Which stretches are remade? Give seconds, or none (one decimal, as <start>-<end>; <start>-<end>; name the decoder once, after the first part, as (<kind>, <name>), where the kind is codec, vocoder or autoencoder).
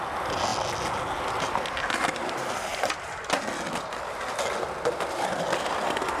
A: 2.7-3.4 (vocoder, BigVGAN v2)